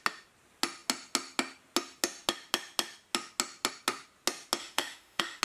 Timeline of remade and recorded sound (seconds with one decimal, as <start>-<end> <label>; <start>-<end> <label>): 0.0-4.6 recorded; 4.6-5.4 remade